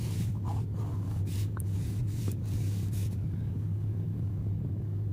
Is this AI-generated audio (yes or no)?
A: yes